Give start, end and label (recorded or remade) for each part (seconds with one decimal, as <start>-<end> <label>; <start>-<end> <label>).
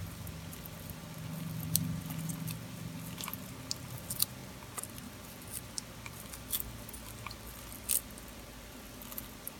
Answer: 0.0-9.6 recorded